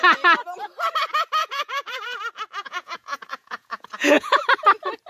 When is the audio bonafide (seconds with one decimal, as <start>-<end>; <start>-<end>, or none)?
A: 0.0-1.4; 2.2-2.6; 4.4-5.1